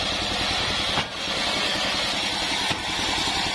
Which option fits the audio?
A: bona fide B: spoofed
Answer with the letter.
A